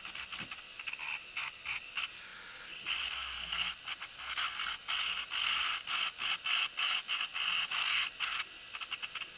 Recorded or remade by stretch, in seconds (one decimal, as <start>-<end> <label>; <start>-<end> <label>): 0.0-9.4 recorded